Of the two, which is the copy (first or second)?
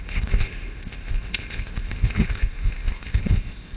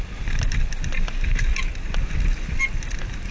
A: first